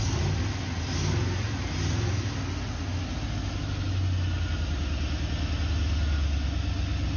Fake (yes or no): no